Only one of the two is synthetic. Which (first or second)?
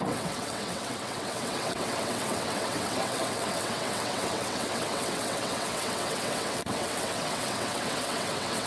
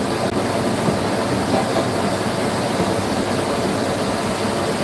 first